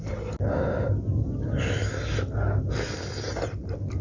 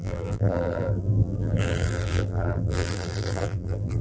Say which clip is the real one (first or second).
first